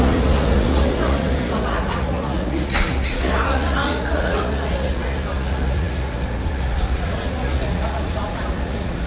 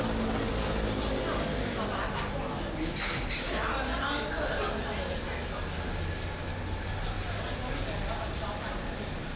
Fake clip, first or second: first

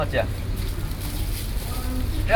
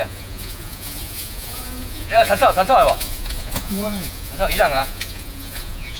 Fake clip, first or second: second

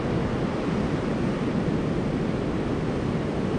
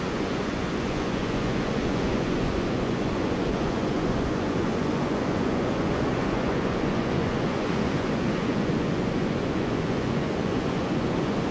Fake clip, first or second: second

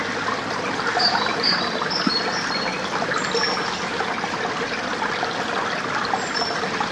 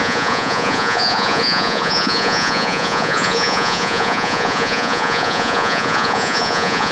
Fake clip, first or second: second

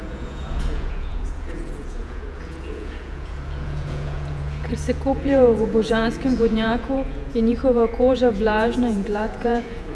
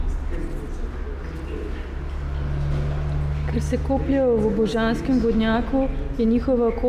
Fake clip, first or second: first